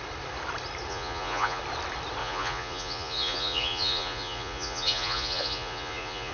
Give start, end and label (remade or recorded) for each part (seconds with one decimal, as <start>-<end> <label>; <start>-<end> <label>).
0.0-0.9 recorded; 0.9-1.6 remade; 1.6-2.2 recorded; 2.2-6.3 remade